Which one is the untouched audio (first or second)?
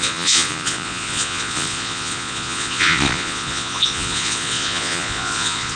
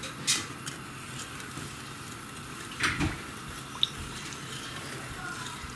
second